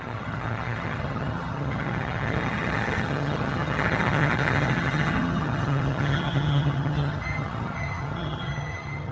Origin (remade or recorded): remade